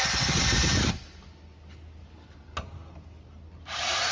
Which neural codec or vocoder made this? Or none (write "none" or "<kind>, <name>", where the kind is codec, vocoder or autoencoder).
none